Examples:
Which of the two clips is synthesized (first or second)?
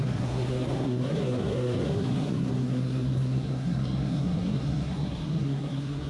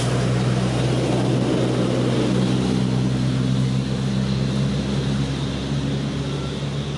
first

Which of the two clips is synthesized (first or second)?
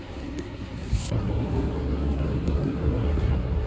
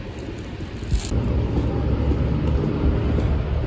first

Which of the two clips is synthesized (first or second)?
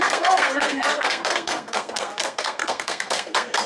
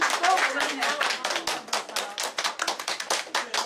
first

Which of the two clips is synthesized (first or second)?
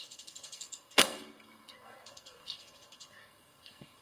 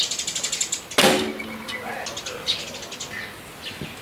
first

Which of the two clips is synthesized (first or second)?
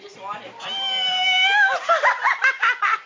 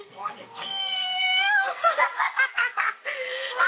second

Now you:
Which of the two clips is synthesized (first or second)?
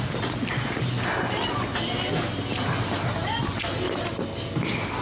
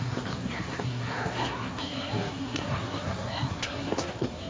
second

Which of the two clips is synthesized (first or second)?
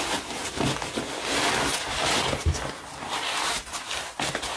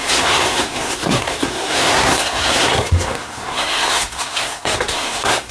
second